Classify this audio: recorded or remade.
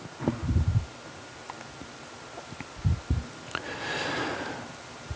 recorded